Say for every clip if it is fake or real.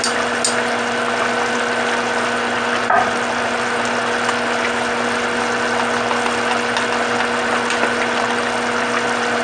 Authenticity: real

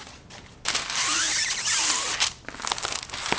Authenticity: real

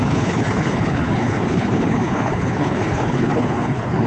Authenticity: fake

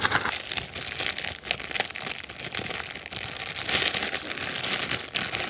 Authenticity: real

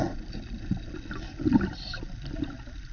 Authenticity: real